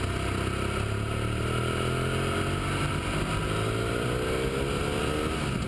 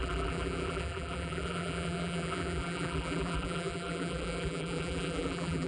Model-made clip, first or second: second